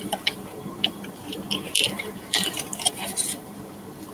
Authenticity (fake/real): fake